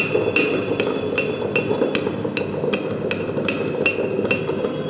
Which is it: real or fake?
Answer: real